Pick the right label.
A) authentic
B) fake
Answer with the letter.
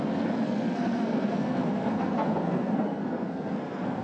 B